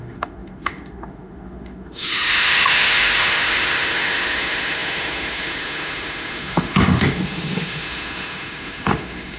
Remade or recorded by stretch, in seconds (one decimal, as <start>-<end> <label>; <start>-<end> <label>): 0.0-9.4 remade